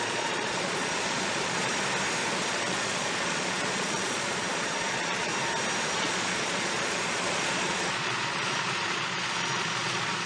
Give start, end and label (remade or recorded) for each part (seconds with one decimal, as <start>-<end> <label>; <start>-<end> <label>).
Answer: 0.0-1.7 remade; 1.7-2.4 recorded; 2.4-5.3 remade; 5.3-5.9 recorded; 5.9-10.3 remade